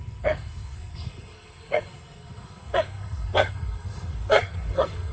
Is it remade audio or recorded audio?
remade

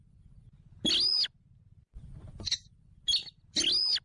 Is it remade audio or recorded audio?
recorded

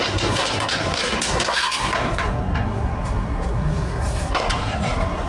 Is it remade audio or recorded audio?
remade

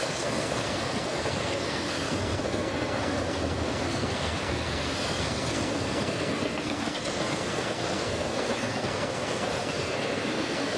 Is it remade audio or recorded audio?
remade